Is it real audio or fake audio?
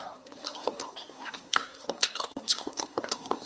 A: fake